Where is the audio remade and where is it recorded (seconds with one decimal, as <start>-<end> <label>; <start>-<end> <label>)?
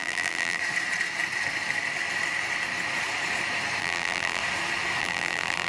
0.0-0.6 remade; 0.6-3.8 recorded; 3.8-4.4 remade; 4.4-5.0 recorded; 5.0-5.7 remade